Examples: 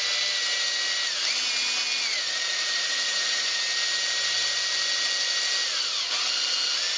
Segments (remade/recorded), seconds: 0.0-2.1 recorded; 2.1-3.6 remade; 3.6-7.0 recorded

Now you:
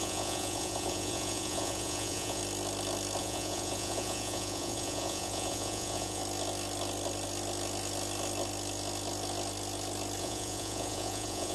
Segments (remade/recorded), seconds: 0.0-2.4 remade; 2.4-3.2 recorded; 3.2-6.2 remade; 6.2-10.2 recorded; 10.2-11.5 remade

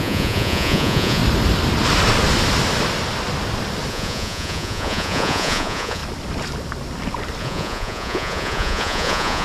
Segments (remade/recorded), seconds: 0.0-1.2 remade; 1.2-3.9 recorded; 3.9-6.0 remade; 6.0-7.4 recorded; 7.4-9.4 remade

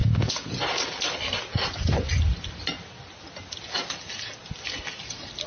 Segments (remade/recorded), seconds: 0.0-0.6 remade; 0.6-5.5 recorded

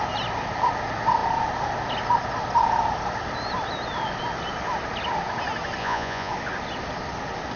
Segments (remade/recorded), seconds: 0.0-5.8 recorded; 5.8-6.3 remade; 6.3-7.6 recorded

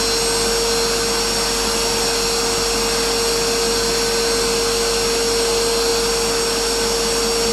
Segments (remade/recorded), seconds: 0.0-7.5 recorded